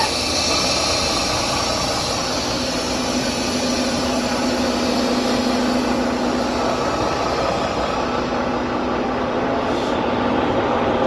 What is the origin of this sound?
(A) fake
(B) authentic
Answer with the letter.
B